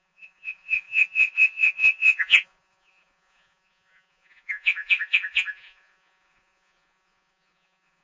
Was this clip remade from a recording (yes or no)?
yes